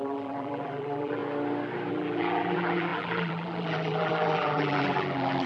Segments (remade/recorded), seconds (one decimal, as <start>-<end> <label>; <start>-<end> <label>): 0.0-1.2 remade; 1.2-1.9 recorded; 1.9-5.5 remade